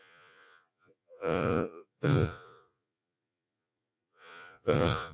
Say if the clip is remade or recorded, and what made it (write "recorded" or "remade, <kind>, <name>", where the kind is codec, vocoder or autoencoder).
remade, vocoder, Vocos